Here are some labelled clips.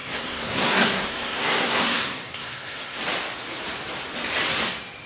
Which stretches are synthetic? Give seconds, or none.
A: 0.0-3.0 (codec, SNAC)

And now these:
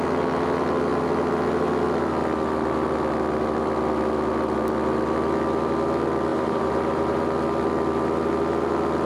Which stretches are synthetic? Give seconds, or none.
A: 6.3-7.2 (vocoder, BigVGAN v2)

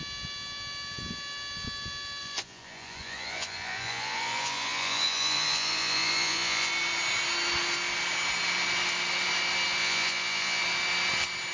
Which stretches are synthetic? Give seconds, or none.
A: 2.2-6.7 (vocoder, Vocos); 9.8-10.6

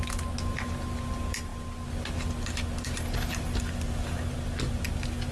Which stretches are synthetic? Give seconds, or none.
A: none

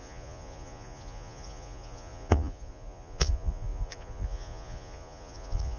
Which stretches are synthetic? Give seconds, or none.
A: 0.0-5.8 (vocoder, Vocos)